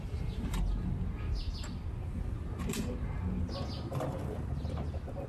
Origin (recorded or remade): recorded